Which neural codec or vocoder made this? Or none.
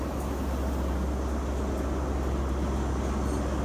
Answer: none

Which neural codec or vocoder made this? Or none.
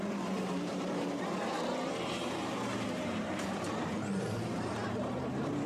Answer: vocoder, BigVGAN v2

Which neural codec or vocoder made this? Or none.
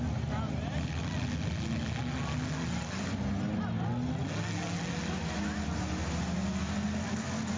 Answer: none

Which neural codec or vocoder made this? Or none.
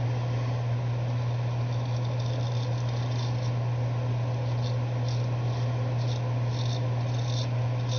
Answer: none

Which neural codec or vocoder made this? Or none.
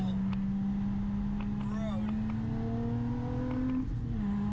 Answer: none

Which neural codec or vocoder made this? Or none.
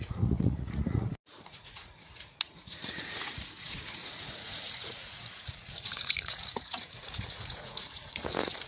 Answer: vocoder, Vocos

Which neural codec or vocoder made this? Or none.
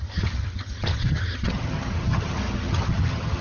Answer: vocoder, HiFi-GAN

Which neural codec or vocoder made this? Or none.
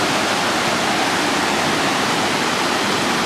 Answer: none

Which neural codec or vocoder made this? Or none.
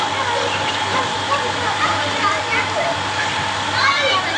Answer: none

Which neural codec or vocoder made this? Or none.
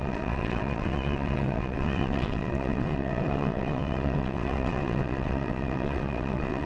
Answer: vocoder, WaveNeXt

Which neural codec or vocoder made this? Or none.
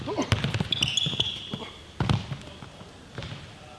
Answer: none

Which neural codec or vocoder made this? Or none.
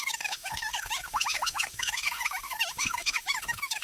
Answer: autoencoder, DAC-VAE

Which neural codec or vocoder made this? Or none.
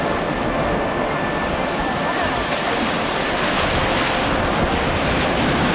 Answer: none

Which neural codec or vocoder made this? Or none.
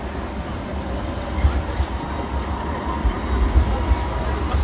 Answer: none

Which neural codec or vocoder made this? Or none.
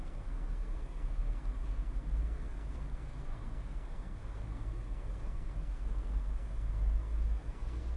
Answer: codec, SNAC